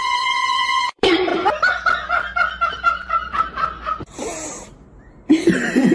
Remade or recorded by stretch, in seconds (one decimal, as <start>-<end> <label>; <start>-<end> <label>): 0.0-1.3 remade; 1.3-2.7 recorded; 2.7-5.9 remade